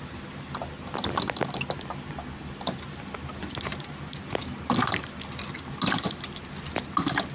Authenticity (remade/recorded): recorded